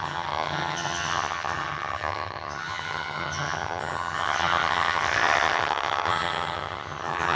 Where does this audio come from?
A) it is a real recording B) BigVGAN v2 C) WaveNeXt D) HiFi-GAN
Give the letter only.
D